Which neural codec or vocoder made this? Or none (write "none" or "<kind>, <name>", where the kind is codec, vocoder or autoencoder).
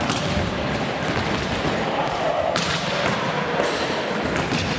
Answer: none